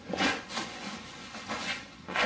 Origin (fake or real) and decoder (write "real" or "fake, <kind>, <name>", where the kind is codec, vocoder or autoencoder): fake, vocoder, Vocos